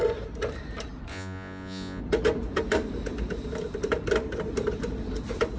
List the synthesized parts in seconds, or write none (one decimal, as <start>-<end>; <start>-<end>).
1.1-2.0

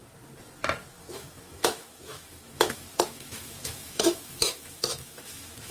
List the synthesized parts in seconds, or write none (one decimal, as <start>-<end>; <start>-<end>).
0.9-5.7

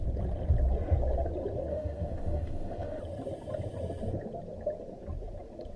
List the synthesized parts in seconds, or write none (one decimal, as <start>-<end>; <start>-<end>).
1.7-3.0

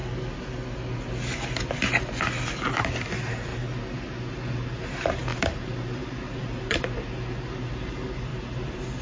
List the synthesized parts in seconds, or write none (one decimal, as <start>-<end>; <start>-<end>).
2.7-3.5; 4.3-9.0

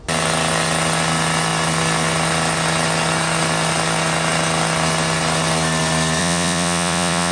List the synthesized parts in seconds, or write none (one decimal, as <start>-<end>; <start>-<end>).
6.2-7.3

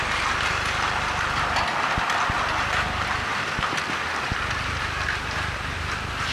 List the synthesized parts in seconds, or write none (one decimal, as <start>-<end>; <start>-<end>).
3.3-4.3